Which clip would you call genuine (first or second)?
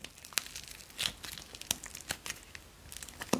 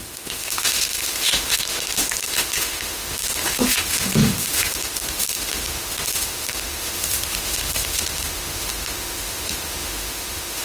first